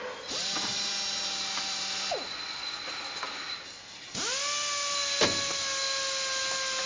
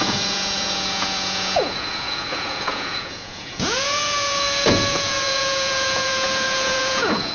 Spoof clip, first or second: second